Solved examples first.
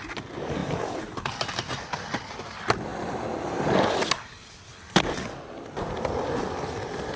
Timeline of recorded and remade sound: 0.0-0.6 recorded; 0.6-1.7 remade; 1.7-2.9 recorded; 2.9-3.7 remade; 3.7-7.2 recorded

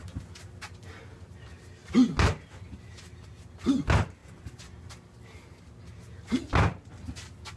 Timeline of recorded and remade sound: 0.0-7.6 recorded

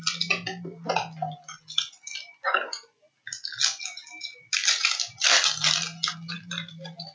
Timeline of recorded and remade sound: 0.0-4.6 recorded; 4.6-5.2 remade; 5.2-7.1 recorded

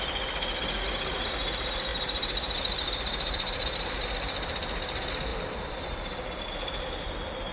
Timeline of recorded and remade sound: 0.0-1.9 recorded; 1.9-3.9 remade; 3.9-5.3 recorded; 5.3-5.9 remade; 5.9-7.5 recorded

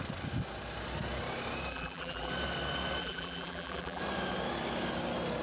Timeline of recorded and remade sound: 0.0-1.7 recorded; 1.7-2.3 remade; 2.3-3.0 recorded; 3.0-4.0 remade; 4.0-5.4 recorded

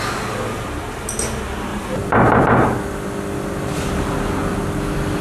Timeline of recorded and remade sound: 0.0-1.7 recorded; 1.7-2.4 remade; 2.4-5.2 recorded